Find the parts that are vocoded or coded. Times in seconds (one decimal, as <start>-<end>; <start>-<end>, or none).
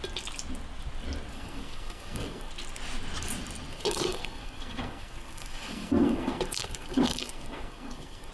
1.3-2.5; 3.7-8.3